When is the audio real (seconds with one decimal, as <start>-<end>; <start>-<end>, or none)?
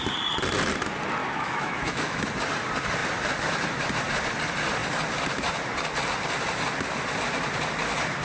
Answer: 0.0-1.2; 2.2-8.2